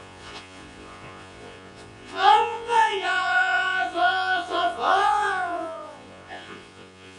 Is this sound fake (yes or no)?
yes